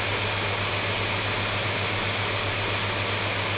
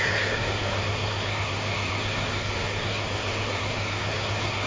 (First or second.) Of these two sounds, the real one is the first